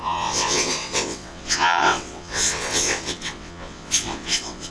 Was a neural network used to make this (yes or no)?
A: yes